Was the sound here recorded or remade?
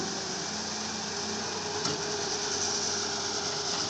recorded